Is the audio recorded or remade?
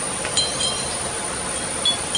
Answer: recorded